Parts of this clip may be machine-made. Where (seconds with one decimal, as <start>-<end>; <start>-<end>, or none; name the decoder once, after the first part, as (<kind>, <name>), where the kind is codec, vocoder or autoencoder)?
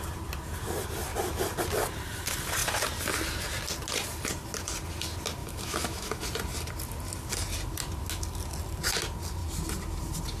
5.4-6.2 (autoencoder, DAC-VAE)